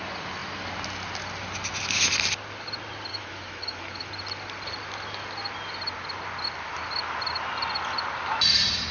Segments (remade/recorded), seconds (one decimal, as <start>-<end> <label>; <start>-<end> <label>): 0.0-3.1 recorded; 3.1-4.1 remade; 4.1-8.9 recorded